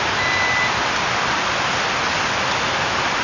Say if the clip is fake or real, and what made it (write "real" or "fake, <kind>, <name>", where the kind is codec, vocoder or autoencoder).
real